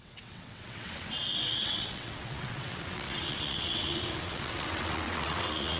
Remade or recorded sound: remade